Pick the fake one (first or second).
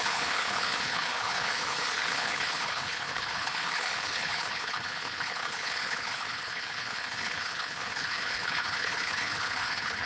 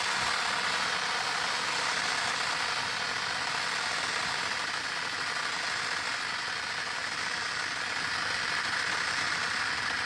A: first